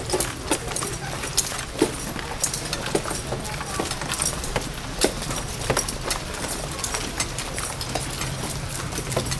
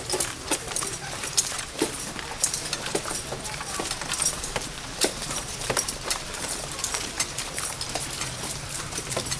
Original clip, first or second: first